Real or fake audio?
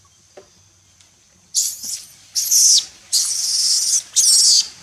real